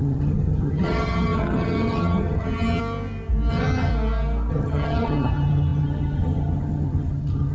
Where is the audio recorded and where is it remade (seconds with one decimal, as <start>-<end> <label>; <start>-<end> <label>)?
0.0-2.8 remade; 2.8-3.5 recorded; 3.5-3.9 remade; 3.9-4.5 recorded; 4.5-7.5 remade